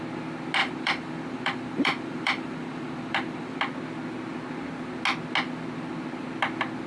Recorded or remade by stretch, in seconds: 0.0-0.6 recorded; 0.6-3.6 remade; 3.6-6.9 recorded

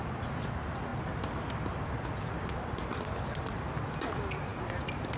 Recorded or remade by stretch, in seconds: 0.0-5.2 recorded

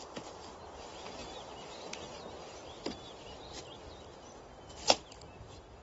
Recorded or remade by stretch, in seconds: 0.0-5.8 remade

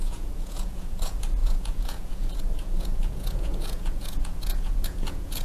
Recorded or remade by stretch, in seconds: 0.0-5.4 remade

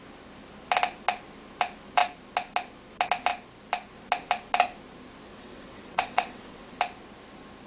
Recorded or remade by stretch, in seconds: 0.0-5.3 recorded; 5.3-6.8 remade; 6.8-7.7 recorded

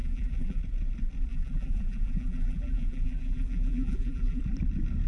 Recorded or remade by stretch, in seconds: 0.0-0.6 remade; 0.6-1.3 recorded; 1.3-4.4 remade; 4.4-5.1 recorded